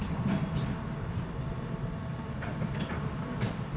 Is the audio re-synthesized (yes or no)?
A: no